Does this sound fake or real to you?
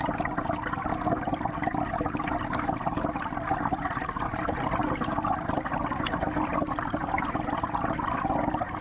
real